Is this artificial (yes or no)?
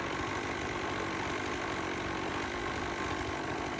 no